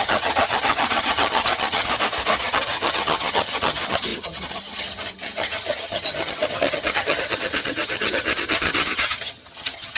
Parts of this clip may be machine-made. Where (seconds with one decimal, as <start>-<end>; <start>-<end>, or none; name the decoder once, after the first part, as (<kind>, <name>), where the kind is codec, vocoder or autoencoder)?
0.0-1.9 (vocoder, HiFi-GAN); 2.4-10.0

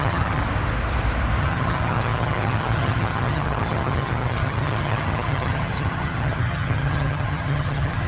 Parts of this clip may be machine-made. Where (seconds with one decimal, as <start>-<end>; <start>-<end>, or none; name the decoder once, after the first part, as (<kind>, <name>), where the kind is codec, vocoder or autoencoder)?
0.0-0.4 (vocoder, HiFi-GAN); 1.4-8.1

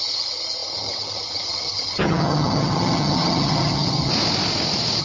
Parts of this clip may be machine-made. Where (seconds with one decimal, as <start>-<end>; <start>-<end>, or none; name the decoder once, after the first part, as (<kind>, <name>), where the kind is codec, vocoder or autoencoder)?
0.0-4.1 (vocoder, HiFi-GAN)

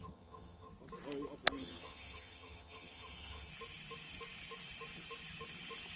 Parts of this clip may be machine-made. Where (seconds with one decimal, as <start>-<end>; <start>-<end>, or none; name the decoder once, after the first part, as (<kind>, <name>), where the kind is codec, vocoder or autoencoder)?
0.0-0.7 (vocoder, HiFi-GAN); 1.6-3.5